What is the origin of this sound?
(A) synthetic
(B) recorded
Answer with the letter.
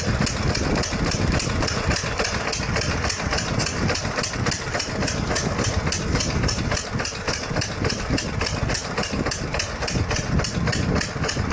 B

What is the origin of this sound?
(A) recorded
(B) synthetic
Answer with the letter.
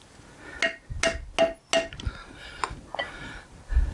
A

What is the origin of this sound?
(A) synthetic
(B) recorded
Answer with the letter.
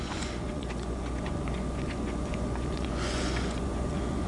A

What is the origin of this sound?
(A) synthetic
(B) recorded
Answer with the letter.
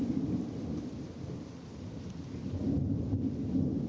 B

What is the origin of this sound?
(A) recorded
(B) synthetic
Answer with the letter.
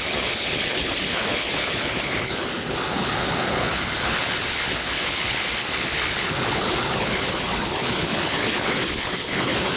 B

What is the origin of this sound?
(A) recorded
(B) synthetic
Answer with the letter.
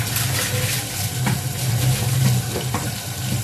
A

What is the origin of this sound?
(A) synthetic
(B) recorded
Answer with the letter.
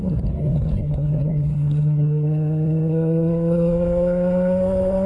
A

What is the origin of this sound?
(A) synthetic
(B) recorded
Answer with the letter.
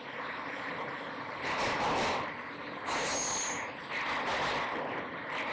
B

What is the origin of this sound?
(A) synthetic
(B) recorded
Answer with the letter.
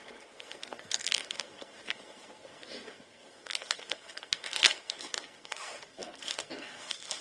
A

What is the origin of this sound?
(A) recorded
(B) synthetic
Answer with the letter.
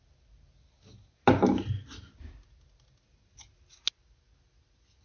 A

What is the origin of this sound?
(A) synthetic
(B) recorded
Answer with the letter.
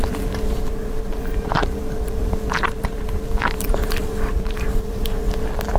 A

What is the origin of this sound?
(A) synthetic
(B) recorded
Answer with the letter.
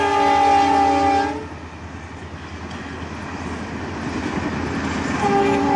B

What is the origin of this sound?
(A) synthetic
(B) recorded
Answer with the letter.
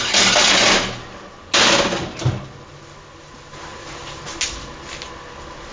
B